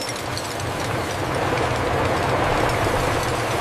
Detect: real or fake real